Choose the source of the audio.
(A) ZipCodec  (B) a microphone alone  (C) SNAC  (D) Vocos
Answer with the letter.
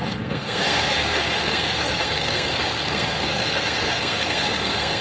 C